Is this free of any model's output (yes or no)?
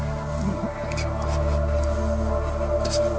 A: yes